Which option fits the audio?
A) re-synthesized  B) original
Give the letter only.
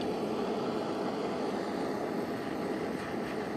B